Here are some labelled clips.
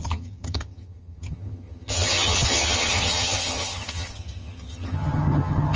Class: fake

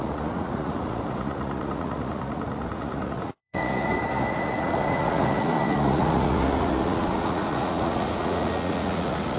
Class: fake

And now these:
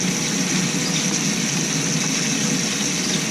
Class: real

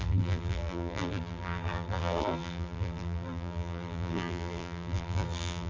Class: fake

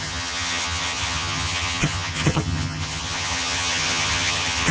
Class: fake